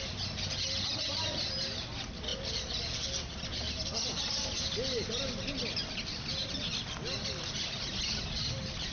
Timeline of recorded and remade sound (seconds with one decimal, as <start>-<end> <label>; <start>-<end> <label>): 0.0-8.9 recorded